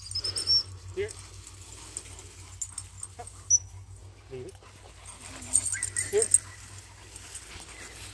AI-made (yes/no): no